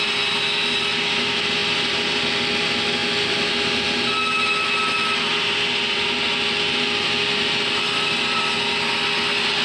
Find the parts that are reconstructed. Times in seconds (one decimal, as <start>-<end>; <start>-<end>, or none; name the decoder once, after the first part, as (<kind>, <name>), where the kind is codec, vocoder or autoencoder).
none